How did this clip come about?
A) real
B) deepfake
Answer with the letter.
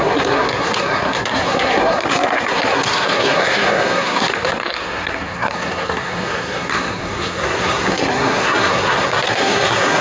B